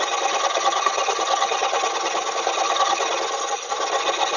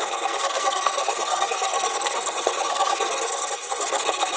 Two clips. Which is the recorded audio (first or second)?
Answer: first